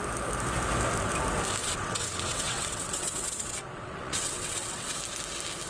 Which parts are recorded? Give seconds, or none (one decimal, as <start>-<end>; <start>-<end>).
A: 0.0-1.6; 5.0-5.7